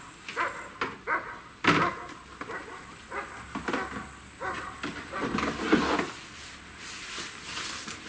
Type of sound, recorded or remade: recorded